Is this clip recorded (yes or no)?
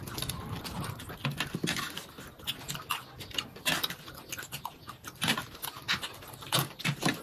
yes